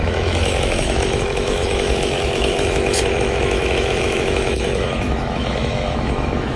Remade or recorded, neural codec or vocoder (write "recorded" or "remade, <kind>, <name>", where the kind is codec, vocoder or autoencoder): remade, autoencoder, DAC-VAE